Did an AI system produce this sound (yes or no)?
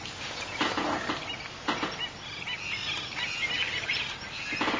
no